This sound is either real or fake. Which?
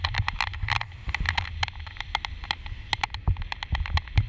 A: real